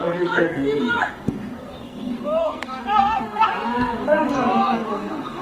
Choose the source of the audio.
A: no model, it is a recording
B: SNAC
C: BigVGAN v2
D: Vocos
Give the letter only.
B